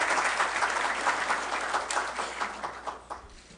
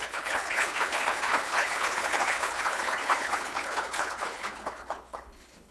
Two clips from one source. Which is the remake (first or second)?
second